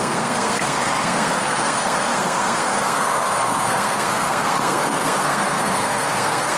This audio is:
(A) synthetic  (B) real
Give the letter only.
A